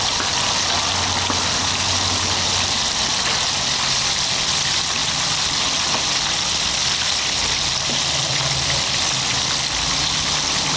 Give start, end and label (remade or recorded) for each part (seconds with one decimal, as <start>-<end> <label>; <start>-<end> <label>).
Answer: 0.0-10.8 recorded